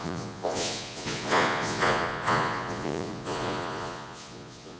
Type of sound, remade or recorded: remade